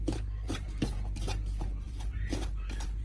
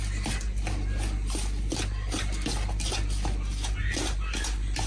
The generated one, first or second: first